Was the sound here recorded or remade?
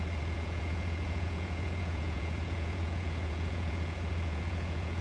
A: remade